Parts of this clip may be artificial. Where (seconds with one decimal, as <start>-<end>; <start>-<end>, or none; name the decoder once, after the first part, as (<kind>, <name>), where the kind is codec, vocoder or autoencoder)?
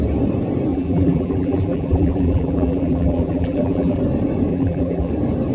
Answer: 0.7-4.0 (vocoder, BigVGAN v2); 4.5-5.1